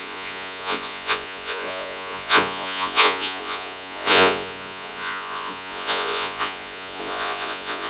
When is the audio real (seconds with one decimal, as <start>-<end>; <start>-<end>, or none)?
none